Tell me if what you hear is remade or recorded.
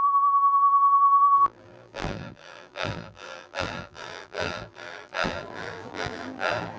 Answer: remade